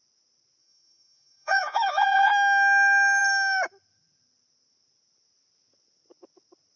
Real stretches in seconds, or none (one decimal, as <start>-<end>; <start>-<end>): 0.0-0.6; 2.3-6.8